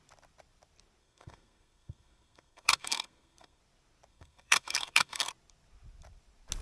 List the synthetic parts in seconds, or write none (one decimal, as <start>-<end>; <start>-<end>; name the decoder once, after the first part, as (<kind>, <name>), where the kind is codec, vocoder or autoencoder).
1.0-3.6 (codec, SNAC); 4.1-5.3